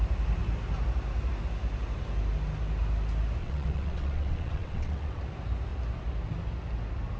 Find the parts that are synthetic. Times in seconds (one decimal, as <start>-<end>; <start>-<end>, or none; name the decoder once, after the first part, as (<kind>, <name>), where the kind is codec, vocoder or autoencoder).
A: 3.4-5.2 (vocoder, WaveNeXt)